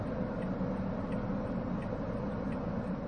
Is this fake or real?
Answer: real